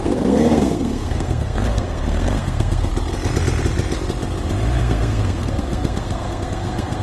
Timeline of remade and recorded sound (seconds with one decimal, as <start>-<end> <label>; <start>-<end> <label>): 0.0-2.9 remade; 2.9-4.8 recorded; 4.8-7.0 remade